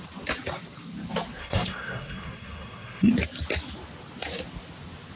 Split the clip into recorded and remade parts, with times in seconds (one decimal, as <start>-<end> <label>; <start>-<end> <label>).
0.0-1.4 recorded; 1.4-3.1 remade; 3.1-5.2 recorded